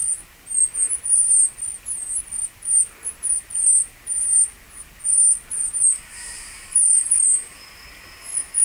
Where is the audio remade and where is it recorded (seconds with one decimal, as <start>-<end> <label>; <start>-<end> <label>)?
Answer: 0.0-8.6 recorded